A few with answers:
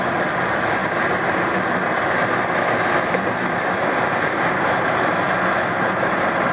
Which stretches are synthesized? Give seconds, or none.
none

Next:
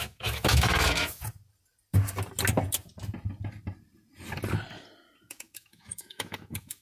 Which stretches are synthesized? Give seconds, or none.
0.0-1.2 (autoencoder, DAC-VAE); 5.3-6.8

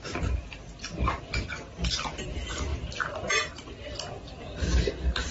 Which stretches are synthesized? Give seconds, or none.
none

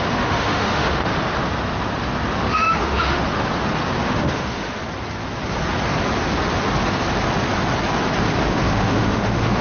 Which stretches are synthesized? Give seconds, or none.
0.0-1.1 (autoencoder, DAC-VAE); 2.5-3.2; 4.0-4.8; 8.5-9.6